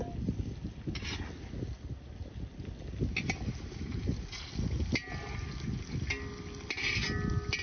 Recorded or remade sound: recorded